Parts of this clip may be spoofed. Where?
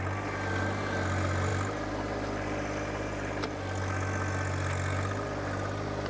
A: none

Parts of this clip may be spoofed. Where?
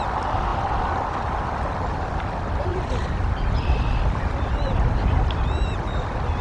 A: 0.5-2.1 (vocoder, BigVGAN v2); 2.7-4.7